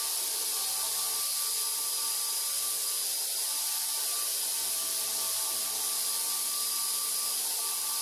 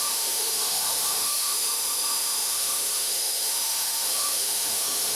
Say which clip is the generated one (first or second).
second